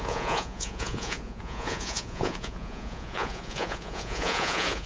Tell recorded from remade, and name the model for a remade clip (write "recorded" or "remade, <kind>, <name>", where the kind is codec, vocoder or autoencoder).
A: remade, vocoder, Vocos